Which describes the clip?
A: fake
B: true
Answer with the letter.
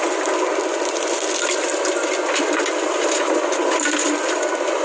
A